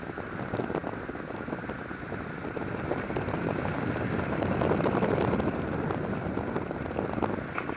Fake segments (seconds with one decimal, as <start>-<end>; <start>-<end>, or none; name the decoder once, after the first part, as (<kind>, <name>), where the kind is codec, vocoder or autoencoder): none